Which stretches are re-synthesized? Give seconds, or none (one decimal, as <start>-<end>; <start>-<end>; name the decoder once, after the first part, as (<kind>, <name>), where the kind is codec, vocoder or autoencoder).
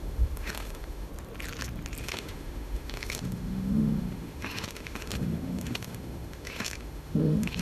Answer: 0.0-1.1 (autoencoder, DAC-VAE); 2.0-7.6